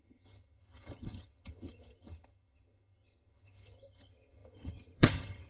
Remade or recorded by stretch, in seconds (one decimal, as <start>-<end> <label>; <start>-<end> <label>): 0.0-5.5 remade

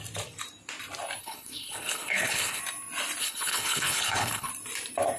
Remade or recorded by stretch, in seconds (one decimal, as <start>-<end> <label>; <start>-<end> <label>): 0.0-1.2 recorded; 1.2-2.6 remade; 2.6-3.2 recorded; 3.2-4.5 remade; 4.5-5.2 recorded

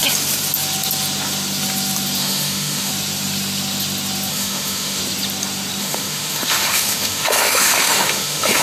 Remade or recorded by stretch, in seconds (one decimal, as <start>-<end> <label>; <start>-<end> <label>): 0.0-2.2 recorded; 2.2-2.9 remade; 2.9-4.3 recorded; 4.3-5.0 remade; 5.0-5.8 recorded; 5.8-8.6 remade

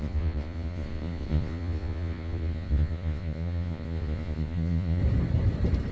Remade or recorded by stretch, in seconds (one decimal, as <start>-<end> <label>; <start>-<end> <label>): 0.0-5.0 remade; 5.0-5.9 recorded